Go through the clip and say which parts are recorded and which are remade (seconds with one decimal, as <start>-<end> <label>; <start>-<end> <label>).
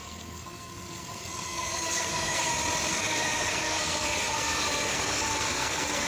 0.0-2.5 remade; 2.5-2.9 recorded; 2.9-6.1 remade